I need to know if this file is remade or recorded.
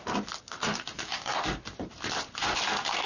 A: remade